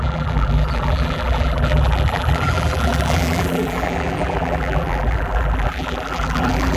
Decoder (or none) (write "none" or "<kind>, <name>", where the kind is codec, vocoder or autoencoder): vocoder, BigVGAN v2